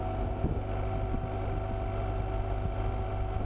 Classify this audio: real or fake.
real